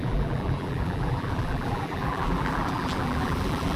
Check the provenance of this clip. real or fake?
fake